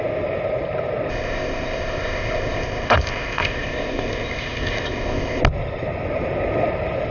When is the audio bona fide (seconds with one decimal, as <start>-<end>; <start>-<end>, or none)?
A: 0.0-1.1; 5.4-7.1